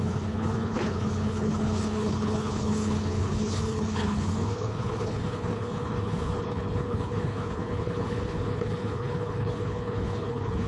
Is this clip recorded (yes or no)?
no